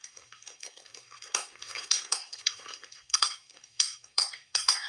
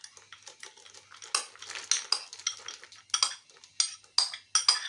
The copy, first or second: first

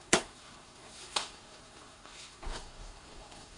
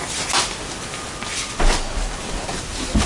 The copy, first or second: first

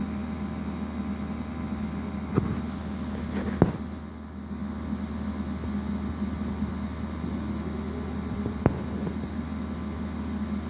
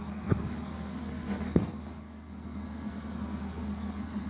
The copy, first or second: second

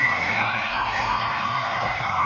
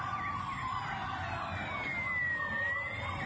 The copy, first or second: first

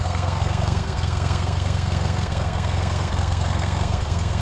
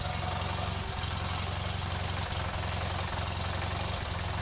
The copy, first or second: first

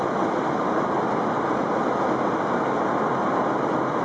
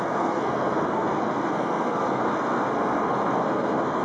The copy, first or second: second